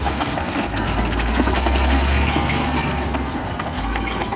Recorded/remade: remade